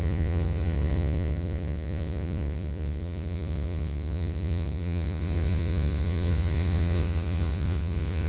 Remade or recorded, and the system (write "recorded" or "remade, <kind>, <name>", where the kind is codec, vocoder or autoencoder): remade, vocoder, Vocos